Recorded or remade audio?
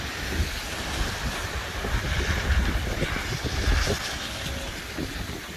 recorded